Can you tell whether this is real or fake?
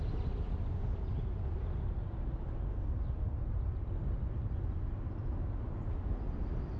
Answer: real